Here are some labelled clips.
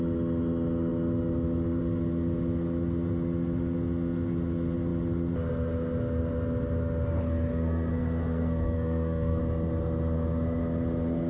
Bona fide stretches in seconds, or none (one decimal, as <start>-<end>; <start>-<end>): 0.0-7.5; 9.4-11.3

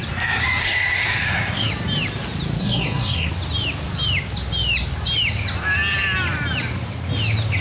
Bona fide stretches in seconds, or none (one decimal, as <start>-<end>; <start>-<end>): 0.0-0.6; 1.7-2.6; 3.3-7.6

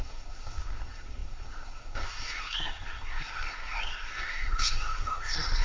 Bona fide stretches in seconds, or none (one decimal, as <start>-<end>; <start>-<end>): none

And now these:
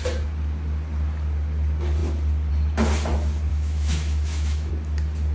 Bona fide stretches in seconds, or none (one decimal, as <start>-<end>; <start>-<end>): 0.0-3.5; 4.7-5.3

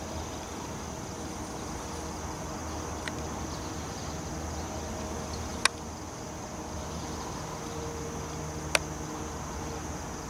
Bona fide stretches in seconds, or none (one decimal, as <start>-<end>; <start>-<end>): 0.0-10.3